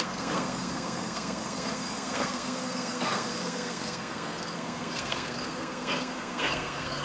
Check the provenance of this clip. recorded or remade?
remade